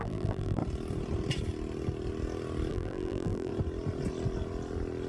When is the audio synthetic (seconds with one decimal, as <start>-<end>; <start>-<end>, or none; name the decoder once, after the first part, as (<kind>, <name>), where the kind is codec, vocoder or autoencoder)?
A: 0.0-0.6 (vocoder, BigVGAN v2); 2.7-3.5